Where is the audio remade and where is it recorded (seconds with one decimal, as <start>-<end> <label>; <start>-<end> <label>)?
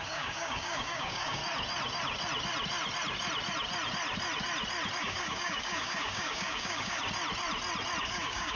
0.0-1.4 remade; 1.4-5.0 recorded; 5.0-7.0 remade; 7.0-8.0 recorded; 8.0-8.6 remade